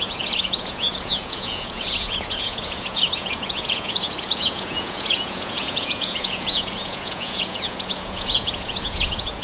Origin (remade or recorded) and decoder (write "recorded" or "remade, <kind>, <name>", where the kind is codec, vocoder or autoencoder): remade, vocoder, Vocos